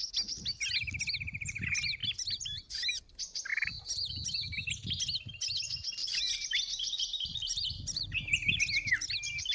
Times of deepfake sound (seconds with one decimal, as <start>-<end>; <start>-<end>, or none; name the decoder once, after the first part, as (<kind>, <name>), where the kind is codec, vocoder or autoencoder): 6.0-8.6 (vocoder, BigVGAN v2)